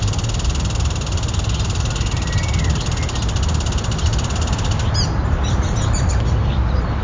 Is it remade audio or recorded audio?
recorded